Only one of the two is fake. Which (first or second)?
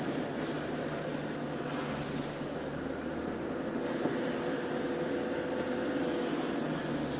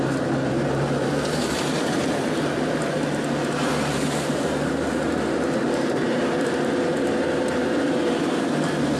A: second